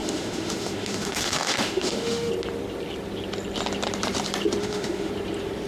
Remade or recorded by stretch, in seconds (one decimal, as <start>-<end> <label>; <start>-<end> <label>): 0.0-2.3 remade; 2.3-4.6 recorded; 4.6-5.1 remade; 5.1-5.7 recorded